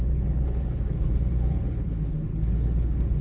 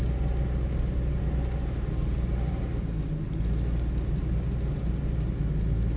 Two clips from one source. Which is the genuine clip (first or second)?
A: second